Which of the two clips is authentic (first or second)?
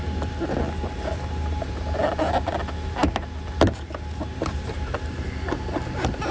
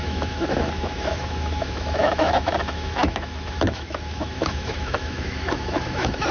first